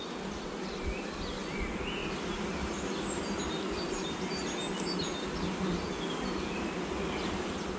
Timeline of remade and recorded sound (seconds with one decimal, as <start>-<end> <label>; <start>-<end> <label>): 0.0-7.8 recorded